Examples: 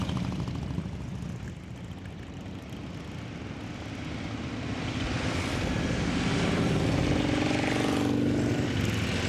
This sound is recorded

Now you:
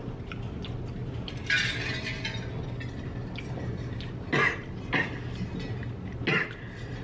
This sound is recorded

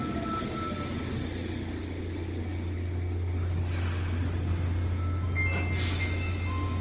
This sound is recorded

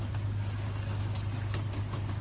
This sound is recorded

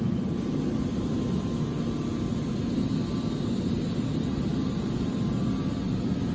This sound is recorded